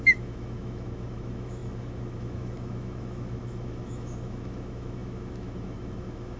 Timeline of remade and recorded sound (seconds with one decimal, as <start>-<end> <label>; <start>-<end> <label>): 0.0-6.4 remade